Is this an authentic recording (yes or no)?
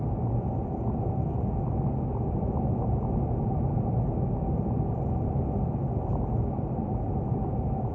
yes